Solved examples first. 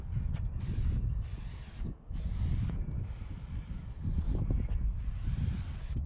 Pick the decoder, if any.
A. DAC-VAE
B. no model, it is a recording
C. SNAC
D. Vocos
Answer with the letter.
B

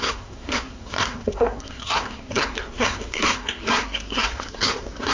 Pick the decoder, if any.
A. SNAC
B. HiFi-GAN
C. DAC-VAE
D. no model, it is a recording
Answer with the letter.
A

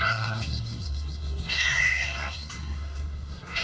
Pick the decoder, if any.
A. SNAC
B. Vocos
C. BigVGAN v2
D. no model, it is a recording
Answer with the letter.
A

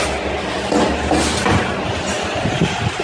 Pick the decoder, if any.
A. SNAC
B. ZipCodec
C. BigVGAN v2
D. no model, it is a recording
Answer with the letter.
D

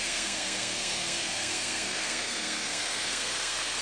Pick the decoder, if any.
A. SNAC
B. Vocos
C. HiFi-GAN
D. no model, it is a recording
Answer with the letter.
A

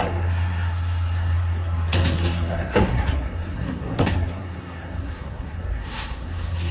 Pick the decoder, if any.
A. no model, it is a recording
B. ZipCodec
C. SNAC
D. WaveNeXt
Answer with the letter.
C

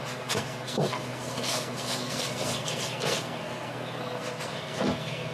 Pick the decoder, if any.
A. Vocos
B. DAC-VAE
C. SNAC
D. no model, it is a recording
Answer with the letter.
C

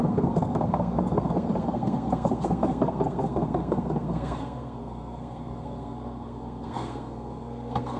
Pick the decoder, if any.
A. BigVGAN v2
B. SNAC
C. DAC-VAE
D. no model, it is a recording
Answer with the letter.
B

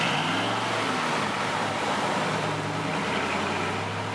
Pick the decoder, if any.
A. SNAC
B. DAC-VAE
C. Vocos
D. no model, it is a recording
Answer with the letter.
D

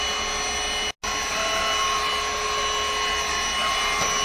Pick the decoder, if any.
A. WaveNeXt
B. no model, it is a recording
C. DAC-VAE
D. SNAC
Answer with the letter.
B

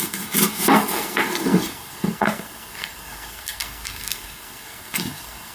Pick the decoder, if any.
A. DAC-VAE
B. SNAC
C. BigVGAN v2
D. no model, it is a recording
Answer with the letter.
B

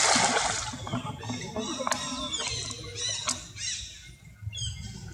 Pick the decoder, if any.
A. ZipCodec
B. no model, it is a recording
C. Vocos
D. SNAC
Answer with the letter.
B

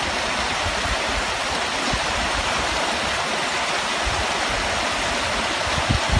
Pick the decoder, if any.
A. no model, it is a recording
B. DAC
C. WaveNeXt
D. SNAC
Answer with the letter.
A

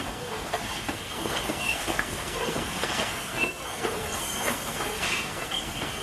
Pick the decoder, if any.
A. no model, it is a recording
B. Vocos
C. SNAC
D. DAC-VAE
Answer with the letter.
C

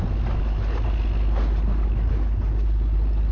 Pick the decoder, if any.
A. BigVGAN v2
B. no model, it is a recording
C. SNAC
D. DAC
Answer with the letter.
B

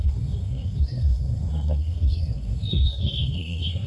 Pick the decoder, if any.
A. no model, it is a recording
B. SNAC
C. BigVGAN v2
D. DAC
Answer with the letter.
B